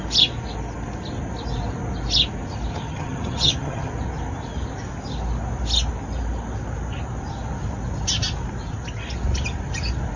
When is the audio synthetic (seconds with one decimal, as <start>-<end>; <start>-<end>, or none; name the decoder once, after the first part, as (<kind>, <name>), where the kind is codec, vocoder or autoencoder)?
2.7-3.9 (vocoder, HiFi-GAN)